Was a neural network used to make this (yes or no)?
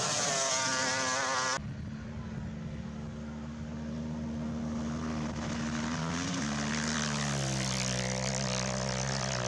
no